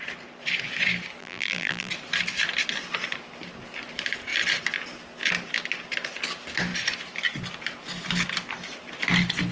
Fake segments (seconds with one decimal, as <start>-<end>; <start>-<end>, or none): 1.2-1.9